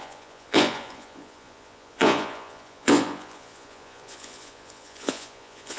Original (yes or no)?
no